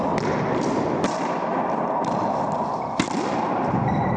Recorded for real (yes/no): no